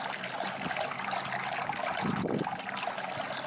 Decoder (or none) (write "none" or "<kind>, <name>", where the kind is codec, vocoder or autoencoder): none